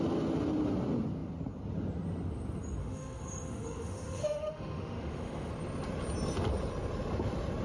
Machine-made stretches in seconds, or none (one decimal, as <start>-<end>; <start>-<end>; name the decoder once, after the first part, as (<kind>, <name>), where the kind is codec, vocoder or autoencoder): 2.8-5.5 (autoencoder, DAC-VAE)